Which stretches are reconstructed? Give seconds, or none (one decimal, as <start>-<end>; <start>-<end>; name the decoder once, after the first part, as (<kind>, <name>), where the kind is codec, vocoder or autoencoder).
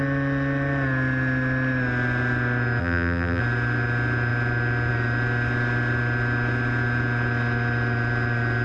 2.8-3.4 (vocoder, BigVGAN v2)